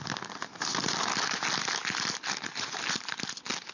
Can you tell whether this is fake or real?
real